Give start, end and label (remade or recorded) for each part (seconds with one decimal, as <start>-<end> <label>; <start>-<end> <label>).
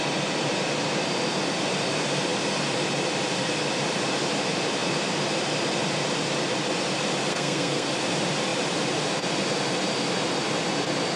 0.0-7.3 recorded; 7.3-7.9 remade; 7.9-11.2 recorded